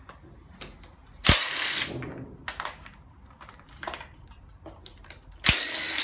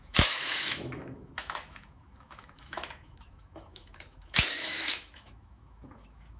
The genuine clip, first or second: first